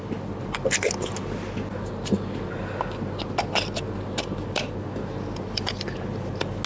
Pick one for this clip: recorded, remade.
recorded